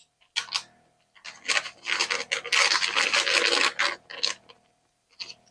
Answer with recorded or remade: recorded